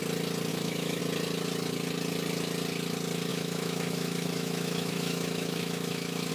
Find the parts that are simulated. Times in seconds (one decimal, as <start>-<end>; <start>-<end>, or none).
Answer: 0.5-1.0; 3.3-6.3